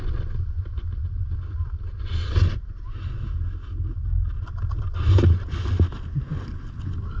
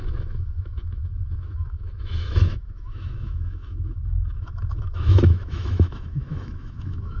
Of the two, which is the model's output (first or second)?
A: second